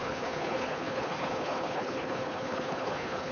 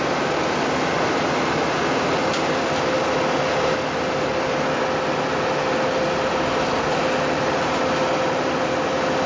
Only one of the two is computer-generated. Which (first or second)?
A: first